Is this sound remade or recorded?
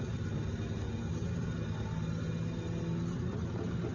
recorded